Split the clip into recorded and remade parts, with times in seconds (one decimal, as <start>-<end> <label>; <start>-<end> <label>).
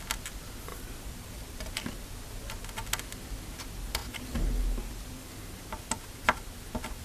0.0-0.7 recorded; 0.7-1.7 remade; 1.7-4.0 recorded; 4.0-7.0 remade